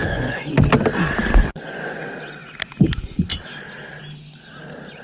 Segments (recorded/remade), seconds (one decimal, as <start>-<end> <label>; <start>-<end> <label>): 0.0-0.5 remade; 0.5-1.5 recorded; 1.5-2.1 remade; 2.1-5.0 recorded